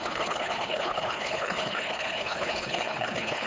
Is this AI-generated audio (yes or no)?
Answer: yes